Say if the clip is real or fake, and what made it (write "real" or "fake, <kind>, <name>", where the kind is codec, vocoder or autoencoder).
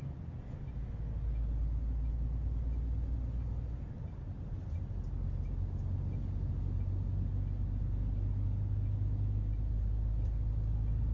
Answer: real